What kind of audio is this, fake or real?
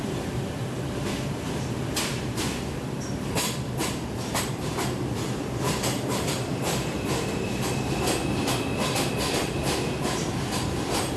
fake